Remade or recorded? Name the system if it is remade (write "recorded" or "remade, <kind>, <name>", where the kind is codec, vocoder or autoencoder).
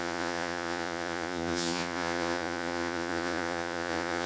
remade, vocoder, Vocos